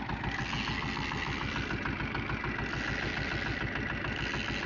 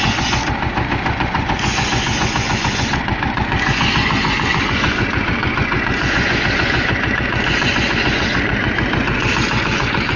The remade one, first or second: second